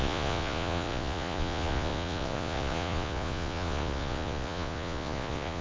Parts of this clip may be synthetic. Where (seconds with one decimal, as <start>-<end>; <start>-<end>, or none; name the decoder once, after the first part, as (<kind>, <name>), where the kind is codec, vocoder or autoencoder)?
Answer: 0.0-5.6 (vocoder, Vocos)